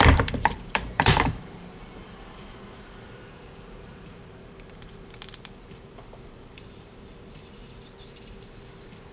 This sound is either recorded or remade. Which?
remade